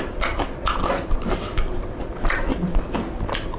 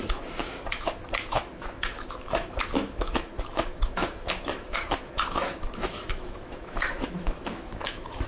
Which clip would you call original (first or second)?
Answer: first